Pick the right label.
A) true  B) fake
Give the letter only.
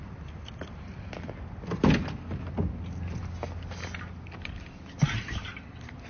A